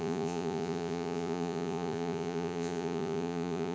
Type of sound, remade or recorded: remade